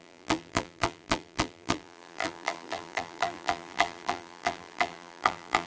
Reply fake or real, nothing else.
fake